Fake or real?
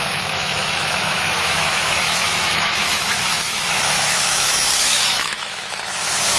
fake